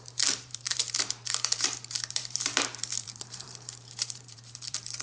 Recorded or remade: remade